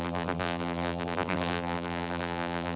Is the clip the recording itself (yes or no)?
no